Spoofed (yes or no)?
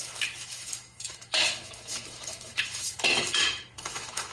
yes